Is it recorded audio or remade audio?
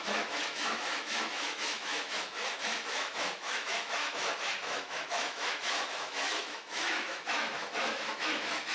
remade